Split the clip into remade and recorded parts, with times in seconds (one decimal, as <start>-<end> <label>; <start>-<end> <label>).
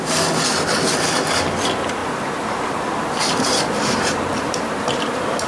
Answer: 0.0-2.0 recorded; 2.0-5.5 remade